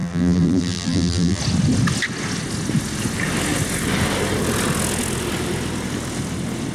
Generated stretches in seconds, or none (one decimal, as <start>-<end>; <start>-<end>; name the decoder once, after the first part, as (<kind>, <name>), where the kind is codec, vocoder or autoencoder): 0.0-1.4 (vocoder, BigVGAN v2)